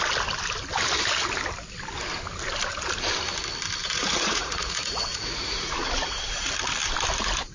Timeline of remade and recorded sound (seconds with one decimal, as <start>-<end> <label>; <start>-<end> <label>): 0.0-3.8 recorded; 3.8-6.5 remade; 6.5-7.5 recorded

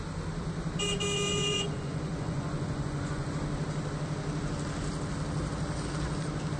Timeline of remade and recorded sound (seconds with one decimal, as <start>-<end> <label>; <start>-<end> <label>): 0.0-1.3 recorded; 1.3-3.3 remade; 3.3-6.6 recorded

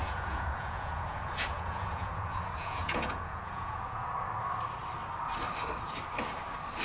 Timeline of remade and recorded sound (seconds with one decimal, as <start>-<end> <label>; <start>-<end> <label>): 0.0-4.1 remade; 4.1-6.8 recorded

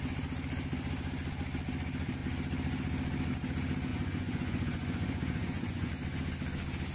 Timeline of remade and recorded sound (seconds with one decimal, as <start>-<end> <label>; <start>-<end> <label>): 0.0-3.9 recorded; 3.9-5.9 remade; 5.9-6.9 recorded

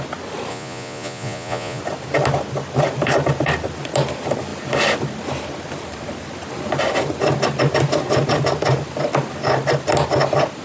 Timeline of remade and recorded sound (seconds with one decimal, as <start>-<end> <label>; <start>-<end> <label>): 0.0-0.5 recorded; 0.5-1.8 remade; 1.8-10.6 recorded